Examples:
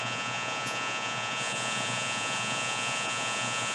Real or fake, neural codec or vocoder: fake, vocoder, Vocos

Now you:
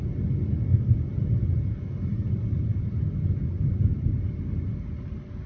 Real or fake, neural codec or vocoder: real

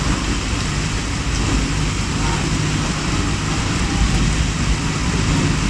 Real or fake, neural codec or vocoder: real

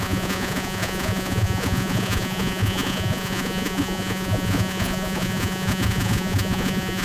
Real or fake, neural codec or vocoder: fake, vocoder, Vocos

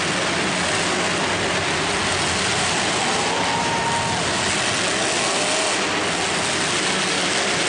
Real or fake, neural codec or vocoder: real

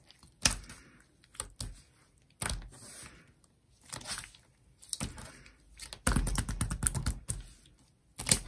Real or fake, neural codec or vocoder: real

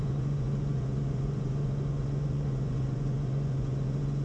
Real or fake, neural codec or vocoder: fake, vocoder, Vocos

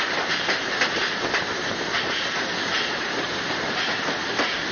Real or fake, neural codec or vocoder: real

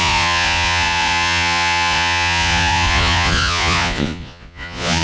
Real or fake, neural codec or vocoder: fake, vocoder, Vocos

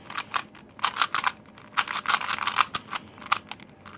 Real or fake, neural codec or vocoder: real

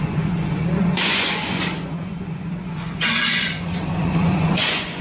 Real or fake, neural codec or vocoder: fake, vocoder, Vocos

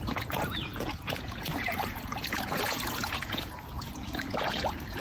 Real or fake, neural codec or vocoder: fake, vocoder, Vocos